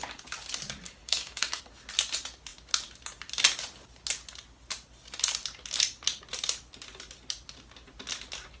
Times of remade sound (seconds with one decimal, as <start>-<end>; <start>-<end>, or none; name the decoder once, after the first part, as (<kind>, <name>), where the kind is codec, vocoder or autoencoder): 1.0-1.6 (codec, DAC)